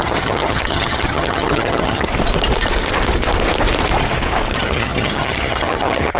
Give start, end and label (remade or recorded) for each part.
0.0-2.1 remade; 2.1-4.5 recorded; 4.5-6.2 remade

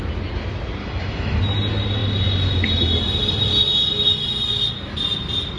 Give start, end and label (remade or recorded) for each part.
0.0-0.8 recorded; 0.8-1.4 remade; 1.4-5.6 recorded

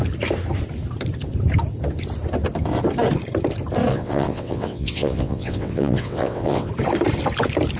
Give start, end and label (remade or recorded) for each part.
0.0-3.9 recorded; 3.9-6.7 remade; 6.7-7.8 recorded